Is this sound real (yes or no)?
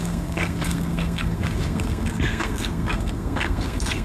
no